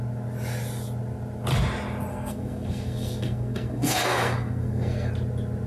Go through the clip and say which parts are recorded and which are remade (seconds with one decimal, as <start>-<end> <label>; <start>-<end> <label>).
0.0-2.1 recorded; 2.1-5.1 remade; 5.1-5.7 recorded